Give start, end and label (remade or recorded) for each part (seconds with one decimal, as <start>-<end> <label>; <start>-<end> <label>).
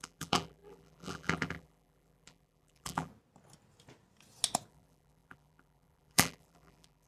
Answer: 0.0-3.1 remade; 3.1-4.7 recorded; 4.7-7.1 remade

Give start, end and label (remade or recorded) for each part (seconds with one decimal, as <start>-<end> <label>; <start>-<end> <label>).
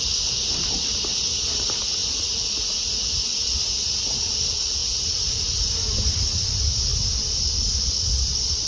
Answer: 0.0-2.0 remade; 2.0-2.9 recorded; 2.9-8.7 remade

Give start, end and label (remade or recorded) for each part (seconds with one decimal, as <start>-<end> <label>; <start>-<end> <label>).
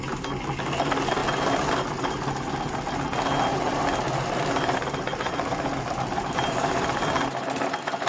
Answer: 0.0-3.5 recorded; 3.5-8.1 remade